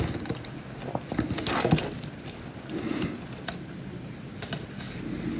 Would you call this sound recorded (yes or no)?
yes